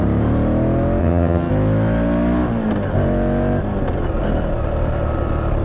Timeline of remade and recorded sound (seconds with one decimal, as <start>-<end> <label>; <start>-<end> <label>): 0.0-1.0 recorded; 1.0-1.5 remade; 1.5-5.6 recorded